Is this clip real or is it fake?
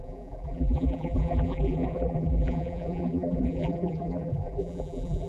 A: fake